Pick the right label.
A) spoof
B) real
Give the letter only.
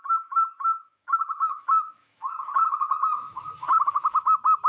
A